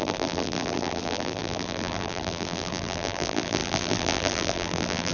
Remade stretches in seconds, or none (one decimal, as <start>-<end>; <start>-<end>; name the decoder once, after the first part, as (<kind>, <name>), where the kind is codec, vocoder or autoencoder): 0.0-5.1 (vocoder, BigVGAN v2)